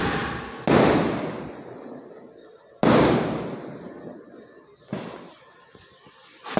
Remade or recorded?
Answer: recorded